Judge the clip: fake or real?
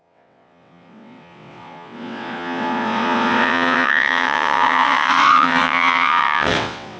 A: fake